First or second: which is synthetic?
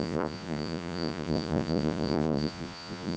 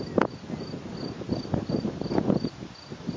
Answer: first